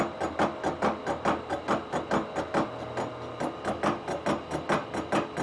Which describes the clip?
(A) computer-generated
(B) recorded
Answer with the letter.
B